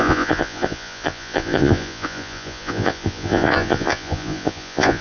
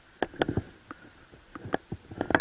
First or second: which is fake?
first